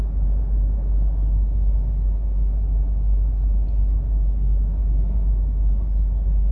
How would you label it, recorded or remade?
recorded